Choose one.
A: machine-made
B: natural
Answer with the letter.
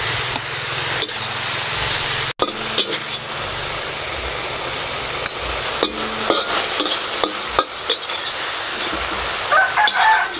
B